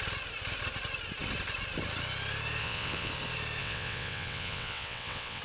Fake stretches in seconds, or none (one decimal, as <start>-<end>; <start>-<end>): 2.6-3.1; 3.6-5.4